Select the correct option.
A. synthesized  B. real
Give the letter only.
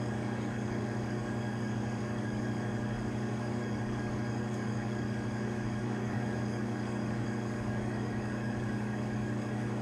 A